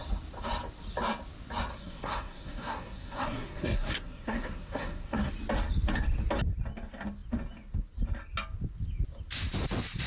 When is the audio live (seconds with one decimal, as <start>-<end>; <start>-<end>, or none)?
0.0-1.7; 5.3-10.1